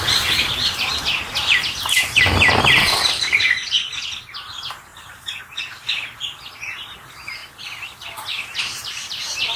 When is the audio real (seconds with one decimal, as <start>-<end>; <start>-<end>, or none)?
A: 0.0-4.9; 5.4-9.6